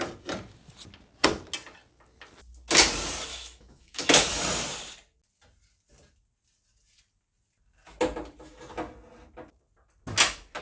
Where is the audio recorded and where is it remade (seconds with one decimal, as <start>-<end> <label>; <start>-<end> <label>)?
0.0-3.3 recorded; 3.3-4.4 remade; 4.4-10.6 recorded